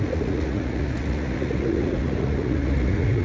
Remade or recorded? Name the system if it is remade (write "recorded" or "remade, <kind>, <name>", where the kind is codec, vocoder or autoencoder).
remade, vocoder, Vocos